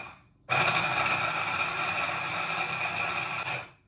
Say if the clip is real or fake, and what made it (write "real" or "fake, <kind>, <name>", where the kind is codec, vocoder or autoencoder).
real